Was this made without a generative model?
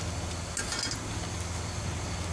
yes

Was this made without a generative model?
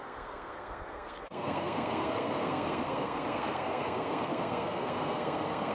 no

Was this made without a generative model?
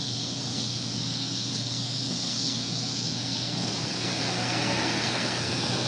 no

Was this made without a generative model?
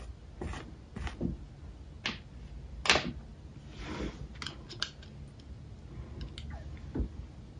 yes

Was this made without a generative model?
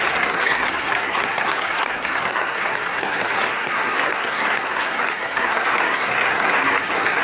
no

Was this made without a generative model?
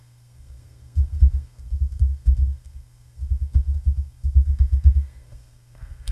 no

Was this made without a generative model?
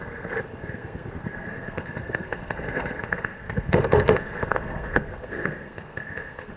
no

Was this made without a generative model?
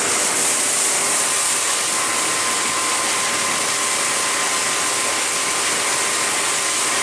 yes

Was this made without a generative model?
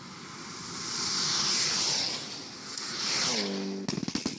yes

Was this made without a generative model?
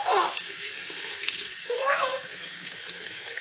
no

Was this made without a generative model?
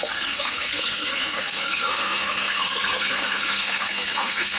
no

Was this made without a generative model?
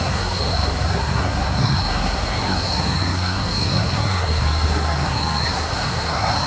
no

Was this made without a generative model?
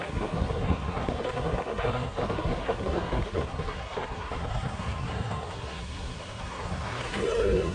no